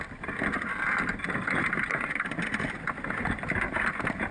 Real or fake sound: real